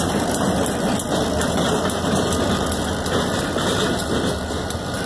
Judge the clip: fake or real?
real